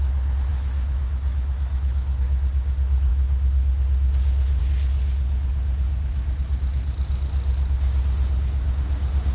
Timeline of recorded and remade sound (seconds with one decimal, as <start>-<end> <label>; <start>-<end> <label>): 0.0-0.5 recorded; 0.5-2.2 remade; 2.2-9.3 recorded